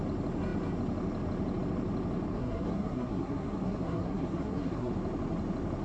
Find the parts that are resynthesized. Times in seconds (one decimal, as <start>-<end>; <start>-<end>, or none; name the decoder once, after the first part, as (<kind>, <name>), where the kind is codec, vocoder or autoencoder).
2.3-4.9 (codec, SNAC)